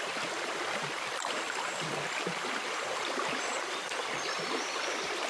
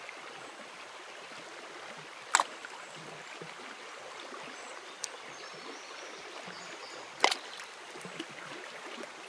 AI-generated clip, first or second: first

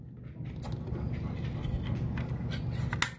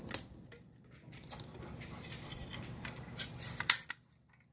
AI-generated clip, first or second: second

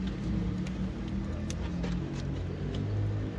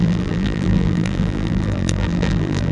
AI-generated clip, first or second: second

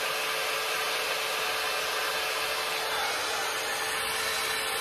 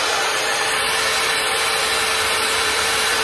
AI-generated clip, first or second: second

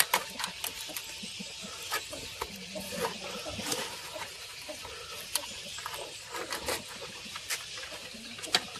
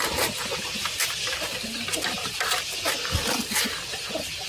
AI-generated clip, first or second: first